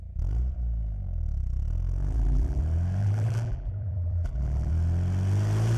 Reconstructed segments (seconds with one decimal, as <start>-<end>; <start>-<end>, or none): 2.0-2.6; 3.0-4.7